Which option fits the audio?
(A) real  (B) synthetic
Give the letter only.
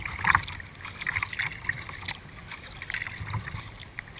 A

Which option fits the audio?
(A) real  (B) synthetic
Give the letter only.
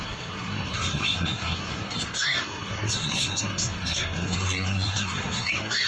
B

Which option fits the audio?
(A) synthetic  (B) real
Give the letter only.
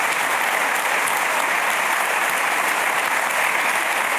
B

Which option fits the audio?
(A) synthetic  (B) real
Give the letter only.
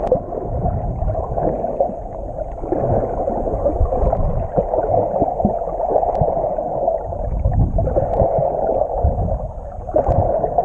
B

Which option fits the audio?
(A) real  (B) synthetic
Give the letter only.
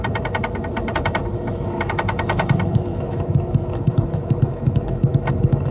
B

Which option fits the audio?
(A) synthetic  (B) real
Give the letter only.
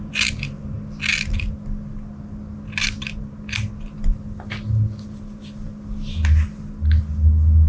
B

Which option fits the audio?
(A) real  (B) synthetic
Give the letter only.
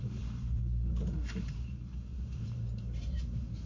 B